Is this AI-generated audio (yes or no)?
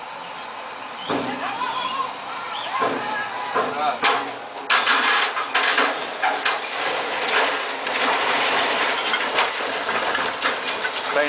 no